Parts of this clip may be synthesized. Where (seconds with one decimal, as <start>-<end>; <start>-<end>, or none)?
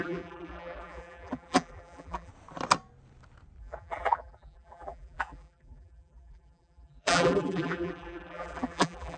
0.0-2.3; 3.6-9.2